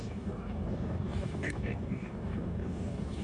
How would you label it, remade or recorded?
remade